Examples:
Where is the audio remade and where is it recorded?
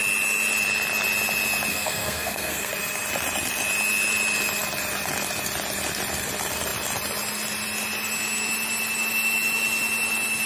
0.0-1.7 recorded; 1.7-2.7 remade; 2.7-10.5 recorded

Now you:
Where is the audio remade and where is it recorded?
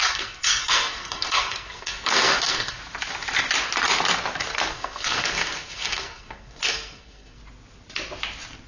0.0-2.8 remade; 2.8-4.7 recorded; 4.7-7.4 remade; 7.4-8.7 recorded